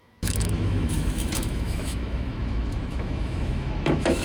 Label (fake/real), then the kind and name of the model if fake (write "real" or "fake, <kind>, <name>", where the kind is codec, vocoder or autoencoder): fake, autoencoder, DAC-VAE